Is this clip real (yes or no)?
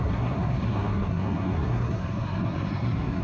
no